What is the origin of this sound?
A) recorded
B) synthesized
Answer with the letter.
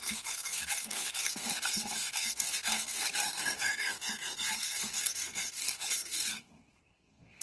B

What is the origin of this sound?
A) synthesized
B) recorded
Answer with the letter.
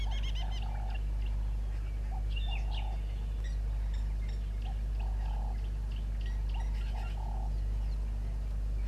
B